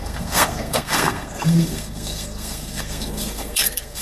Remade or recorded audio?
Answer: remade